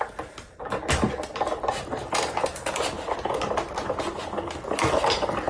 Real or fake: real